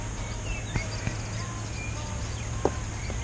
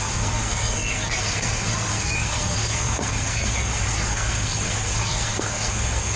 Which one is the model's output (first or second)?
second